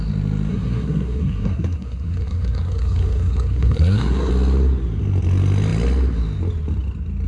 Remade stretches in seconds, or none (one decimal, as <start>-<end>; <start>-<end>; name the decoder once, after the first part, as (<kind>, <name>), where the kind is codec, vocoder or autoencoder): 0.5-4.3 (codec, SNAC)